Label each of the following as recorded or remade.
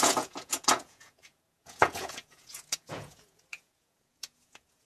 remade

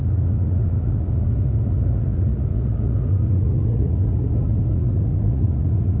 remade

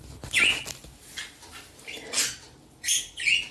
recorded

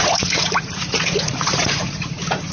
remade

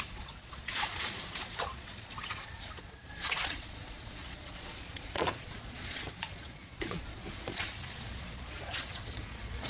remade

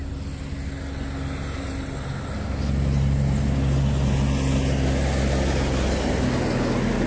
recorded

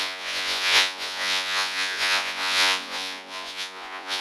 remade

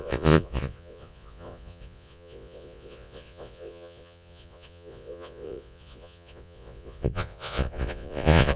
remade